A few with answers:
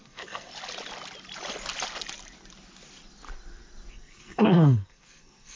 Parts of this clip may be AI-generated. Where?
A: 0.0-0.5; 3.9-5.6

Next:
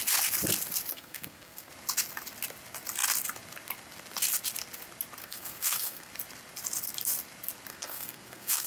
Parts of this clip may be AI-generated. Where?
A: 0.9-1.7; 5.2-6.1; 7.7-8.7